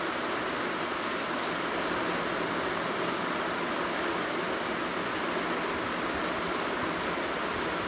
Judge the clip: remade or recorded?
recorded